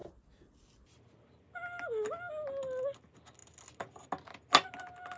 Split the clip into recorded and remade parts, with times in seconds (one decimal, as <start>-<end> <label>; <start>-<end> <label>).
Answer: 0.0-5.2 recorded